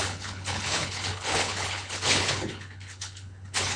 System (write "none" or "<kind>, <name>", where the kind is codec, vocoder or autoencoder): codec, HILCodec